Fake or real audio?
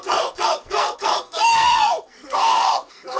fake